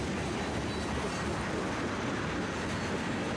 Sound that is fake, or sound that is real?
real